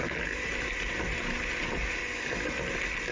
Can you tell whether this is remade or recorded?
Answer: recorded